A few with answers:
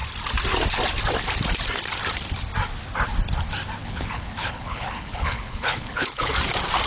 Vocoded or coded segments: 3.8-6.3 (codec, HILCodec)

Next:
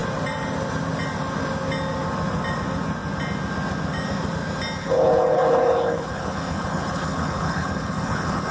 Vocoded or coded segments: 4.8-8.5 (codec, HILCodec)

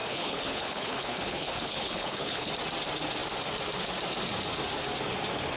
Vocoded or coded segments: 0.0-2.5 (codec, HILCodec)